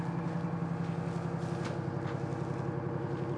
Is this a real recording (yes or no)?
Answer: yes